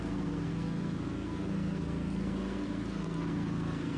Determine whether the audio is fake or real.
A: fake